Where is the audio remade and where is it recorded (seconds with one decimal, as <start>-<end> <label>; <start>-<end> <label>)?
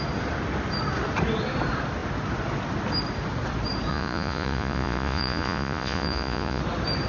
0.0-3.9 recorded; 3.9-6.6 remade; 6.6-7.1 recorded